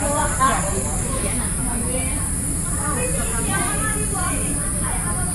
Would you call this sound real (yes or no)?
yes